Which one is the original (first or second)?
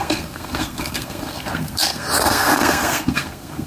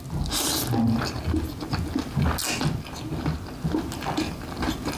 second